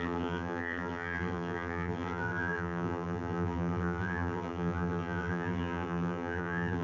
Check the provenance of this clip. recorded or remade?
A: remade